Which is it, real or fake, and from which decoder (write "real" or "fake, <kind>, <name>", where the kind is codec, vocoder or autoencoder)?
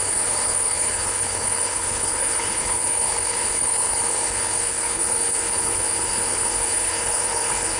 fake, codec, HILCodec